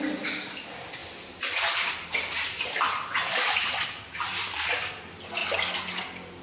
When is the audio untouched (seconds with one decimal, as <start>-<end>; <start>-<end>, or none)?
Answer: 0.0-6.4